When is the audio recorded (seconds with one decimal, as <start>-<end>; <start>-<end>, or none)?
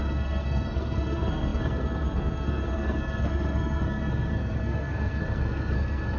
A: none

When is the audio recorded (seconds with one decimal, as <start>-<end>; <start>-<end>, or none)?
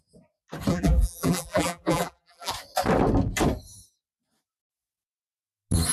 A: 0.0-0.7; 2.5-5.9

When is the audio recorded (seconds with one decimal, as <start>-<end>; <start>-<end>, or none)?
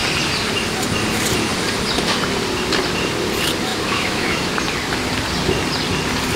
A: 0.0-3.7; 4.5-6.4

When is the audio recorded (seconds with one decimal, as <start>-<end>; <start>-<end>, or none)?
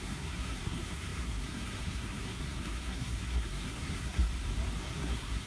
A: 4.3-4.8